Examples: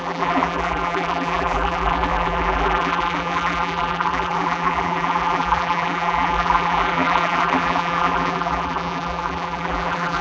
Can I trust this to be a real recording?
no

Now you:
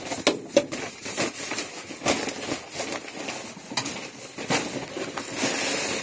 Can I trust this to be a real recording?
yes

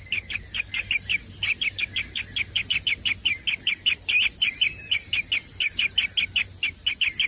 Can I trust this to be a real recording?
yes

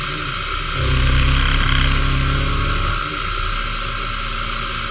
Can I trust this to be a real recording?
yes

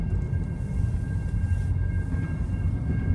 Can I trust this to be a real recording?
yes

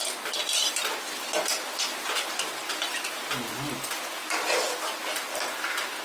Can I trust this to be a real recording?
yes